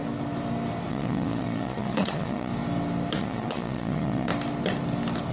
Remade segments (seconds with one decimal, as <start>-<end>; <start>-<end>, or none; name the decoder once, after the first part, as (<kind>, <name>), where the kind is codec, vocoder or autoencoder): 0.9-2.5 (vocoder, Vocos); 3.1-4.3